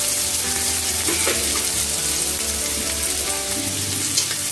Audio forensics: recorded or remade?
recorded